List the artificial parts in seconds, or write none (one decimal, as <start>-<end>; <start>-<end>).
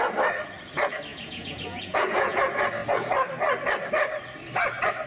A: 1.1-2.4